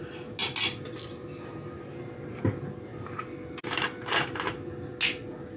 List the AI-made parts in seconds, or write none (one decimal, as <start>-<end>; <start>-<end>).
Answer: none